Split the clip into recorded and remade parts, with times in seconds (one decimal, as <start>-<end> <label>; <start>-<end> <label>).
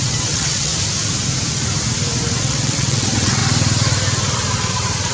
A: 0.0-0.7 remade; 0.7-2.4 recorded; 2.4-3.4 remade; 3.4-5.1 recorded